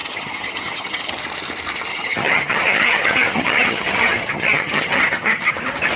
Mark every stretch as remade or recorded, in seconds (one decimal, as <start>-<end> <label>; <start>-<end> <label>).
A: 0.0-1.1 remade; 1.1-1.9 recorded; 1.9-5.5 remade; 5.5-6.0 recorded